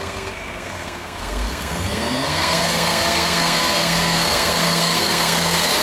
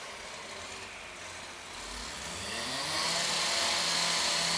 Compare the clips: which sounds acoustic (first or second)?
second